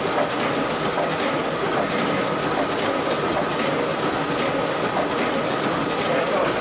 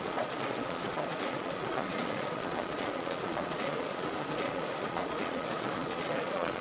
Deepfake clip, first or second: second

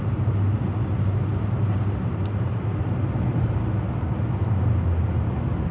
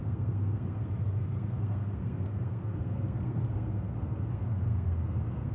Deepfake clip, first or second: second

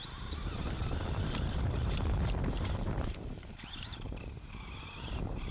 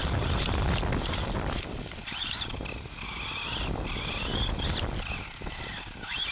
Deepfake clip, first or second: first